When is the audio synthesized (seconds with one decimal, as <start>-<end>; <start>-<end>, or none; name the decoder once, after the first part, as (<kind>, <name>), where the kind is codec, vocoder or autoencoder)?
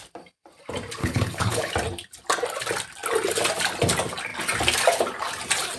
1.0-1.7 (codec, HILCodec)